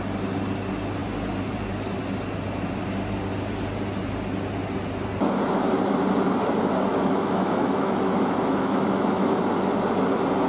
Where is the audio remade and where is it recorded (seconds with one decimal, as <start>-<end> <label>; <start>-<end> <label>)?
0.0-6.9 recorded; 6.9-9.4 remade; 9.4-10.5 recorded